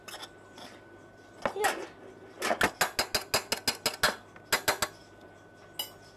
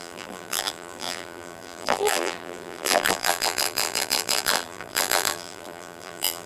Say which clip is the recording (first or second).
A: first